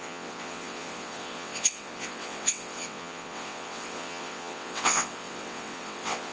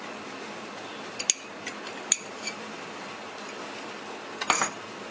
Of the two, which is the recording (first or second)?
second